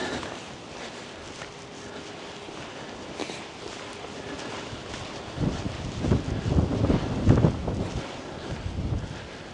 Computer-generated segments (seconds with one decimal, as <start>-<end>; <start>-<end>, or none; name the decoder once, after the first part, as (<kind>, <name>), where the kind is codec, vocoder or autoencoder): none